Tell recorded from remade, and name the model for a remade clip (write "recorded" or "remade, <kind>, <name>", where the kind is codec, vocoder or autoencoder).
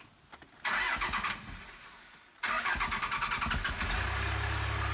recorded